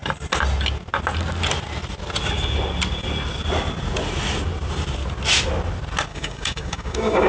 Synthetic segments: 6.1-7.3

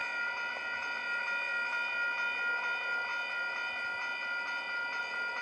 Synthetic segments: none

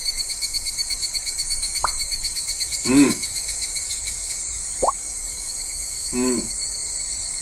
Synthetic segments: 0.0-7.4

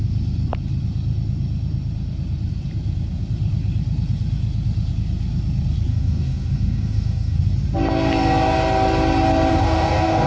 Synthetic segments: 5.9-7.4; 9.5-10.3